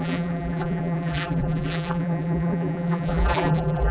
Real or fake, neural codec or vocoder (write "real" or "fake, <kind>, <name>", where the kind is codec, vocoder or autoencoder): fake, vocoder, BigVGAN v2